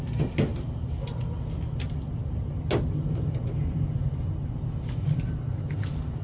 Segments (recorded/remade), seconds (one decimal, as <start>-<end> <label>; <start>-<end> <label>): 0.0-6.2 recorded